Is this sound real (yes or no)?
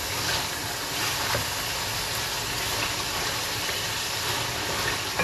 yes